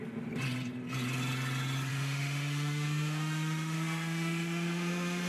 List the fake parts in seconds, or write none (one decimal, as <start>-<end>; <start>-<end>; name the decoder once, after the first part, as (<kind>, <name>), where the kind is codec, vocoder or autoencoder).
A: 1.9-5.3 (autoencoder, DAC-VAE)